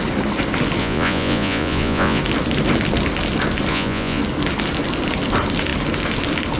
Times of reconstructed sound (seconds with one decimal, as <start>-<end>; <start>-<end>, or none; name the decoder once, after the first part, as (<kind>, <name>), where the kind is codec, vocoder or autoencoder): 0.8-2.2 (vocoder, Vocos); 3.7-4.2

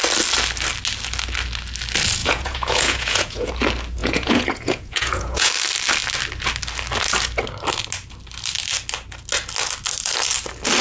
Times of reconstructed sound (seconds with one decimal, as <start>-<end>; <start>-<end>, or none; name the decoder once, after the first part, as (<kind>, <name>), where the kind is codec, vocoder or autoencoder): 2.2-3.5 (vocoder, Vocos); 4.0-5.5

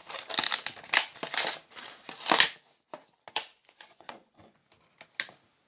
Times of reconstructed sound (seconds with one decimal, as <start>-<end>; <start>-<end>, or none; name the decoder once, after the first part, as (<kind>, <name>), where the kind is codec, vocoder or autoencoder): 3.3-4.6 (vocoder, Vocos)

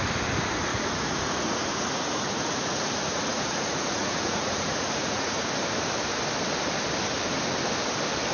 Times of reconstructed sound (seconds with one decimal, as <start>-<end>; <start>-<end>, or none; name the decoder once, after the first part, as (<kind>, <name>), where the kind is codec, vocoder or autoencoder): 0.7-5.5 (vocoder, Vocos)

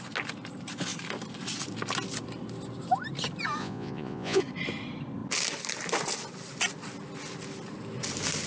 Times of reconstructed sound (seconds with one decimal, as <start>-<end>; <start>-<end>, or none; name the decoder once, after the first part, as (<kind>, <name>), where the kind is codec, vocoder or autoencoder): 3.6-4.4 (vocoder, Vocos)

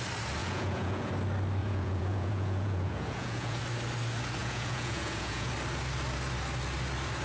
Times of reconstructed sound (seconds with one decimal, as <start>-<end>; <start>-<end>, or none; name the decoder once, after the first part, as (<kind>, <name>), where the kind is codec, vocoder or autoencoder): 0.4-1.1 (vocoder, Vocos); 1.6-3.6; 4.4-5.5

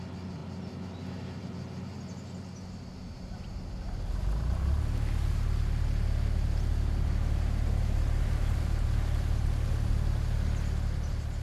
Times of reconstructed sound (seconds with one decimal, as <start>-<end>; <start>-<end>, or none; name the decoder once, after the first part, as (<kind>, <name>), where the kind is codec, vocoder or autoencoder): none